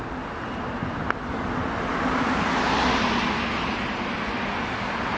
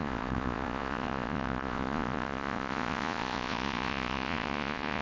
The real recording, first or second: first